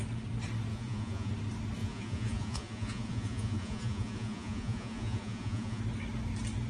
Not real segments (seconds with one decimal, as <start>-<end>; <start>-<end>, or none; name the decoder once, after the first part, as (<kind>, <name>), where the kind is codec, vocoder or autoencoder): 0.7-1.3 (vocoder, Vocos); 1.8-5.8